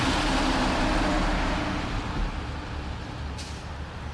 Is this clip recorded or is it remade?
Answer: recorded